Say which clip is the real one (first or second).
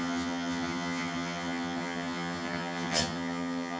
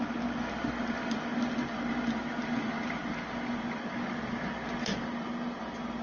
second